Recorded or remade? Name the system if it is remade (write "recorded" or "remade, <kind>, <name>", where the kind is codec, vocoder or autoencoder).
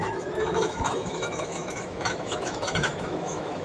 remade, autoencoder, DAC-VAE